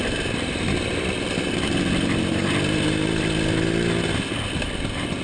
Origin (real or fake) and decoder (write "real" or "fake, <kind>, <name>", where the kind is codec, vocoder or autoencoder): real